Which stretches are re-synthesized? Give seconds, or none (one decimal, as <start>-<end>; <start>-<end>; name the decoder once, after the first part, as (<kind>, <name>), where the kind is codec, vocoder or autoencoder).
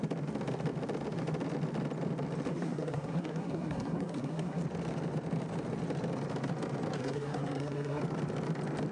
2.5-4.6 (codec, SNAC); 7.0-8.0